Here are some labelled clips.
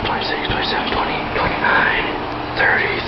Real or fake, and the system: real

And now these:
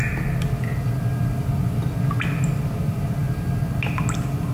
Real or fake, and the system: real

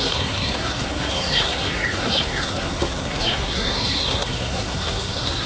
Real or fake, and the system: fake, codec, SNAC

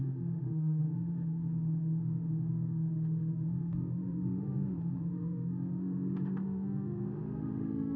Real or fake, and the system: fake, autoencoder, DAC-VAE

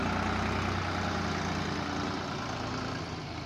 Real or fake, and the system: real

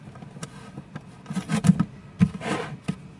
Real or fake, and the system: real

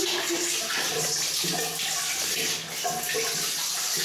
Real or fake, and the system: real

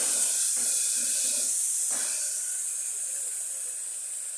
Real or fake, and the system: real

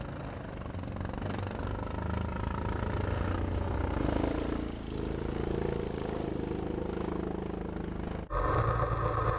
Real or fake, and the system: real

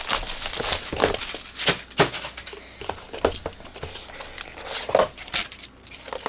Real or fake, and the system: real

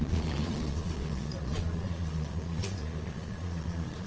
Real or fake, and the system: fake, vocoder, Vocos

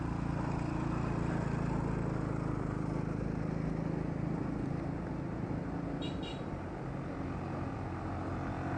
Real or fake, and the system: real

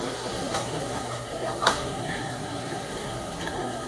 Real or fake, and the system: fake, codec, SNAC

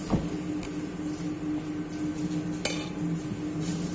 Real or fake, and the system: real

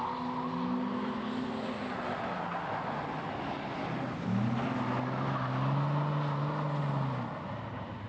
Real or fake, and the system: real